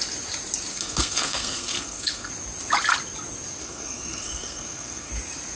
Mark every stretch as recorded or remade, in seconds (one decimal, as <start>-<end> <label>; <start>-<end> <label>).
0.0-0.7 recorded; 0.7-2.3 remade; 2.3-3.6 recorded; 3.6-5.1 remade; 5.1-5.6 recorded